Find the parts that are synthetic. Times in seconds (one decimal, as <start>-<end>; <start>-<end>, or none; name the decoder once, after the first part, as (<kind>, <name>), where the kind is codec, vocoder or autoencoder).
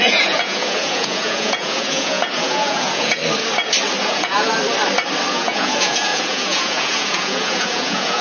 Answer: 0.0-3.2 (vocoder, Vocos); 4.0-4.5; 5.3-8.2